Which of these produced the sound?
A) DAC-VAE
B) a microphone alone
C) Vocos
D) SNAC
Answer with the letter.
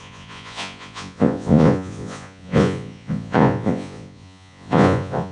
C